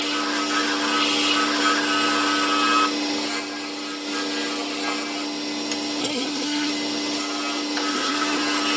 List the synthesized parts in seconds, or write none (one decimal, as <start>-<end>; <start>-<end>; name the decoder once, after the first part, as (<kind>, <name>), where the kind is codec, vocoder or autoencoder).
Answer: 6.0-6.7 (codec, SNAC); 7.9-8.4